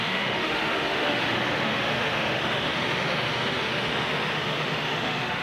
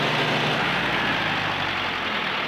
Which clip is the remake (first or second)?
first